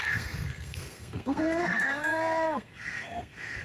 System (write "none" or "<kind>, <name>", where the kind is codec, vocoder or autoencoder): codec, SNAC